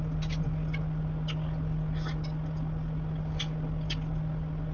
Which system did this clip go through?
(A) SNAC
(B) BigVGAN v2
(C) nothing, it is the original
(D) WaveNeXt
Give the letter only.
C